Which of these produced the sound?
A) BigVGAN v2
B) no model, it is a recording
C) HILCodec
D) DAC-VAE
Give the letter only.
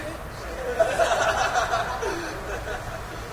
B